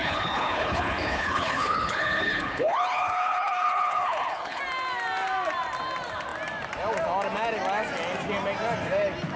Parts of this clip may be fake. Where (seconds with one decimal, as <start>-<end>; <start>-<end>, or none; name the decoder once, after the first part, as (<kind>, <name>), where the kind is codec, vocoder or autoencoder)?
0.0-4.6 (codec, HILCodec)